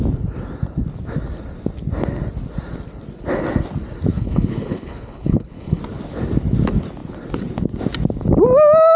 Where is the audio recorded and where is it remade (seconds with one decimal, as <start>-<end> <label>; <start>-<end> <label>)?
0.0-4.1 recorded; 4.1-5.8 remade; 5.8-9.0 recorded